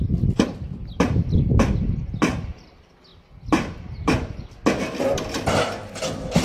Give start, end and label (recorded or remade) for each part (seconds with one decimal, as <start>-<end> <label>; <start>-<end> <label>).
0.0-6.4 recorded